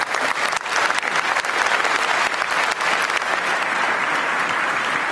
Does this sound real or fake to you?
real